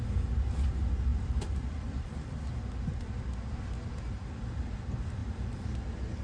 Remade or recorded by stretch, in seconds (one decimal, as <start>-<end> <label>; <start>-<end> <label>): 0.0-1.1 recorded; 1.1-2.5 remade; 2.5-5.2 recorded; 5.2-5.8 remade; 5.8-6.2 recorded